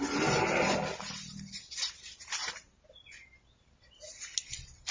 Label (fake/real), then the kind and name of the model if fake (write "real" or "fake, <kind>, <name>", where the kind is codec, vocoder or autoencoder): real